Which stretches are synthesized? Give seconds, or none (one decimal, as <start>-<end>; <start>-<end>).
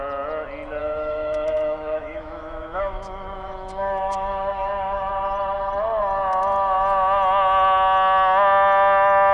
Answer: 0.8-5.1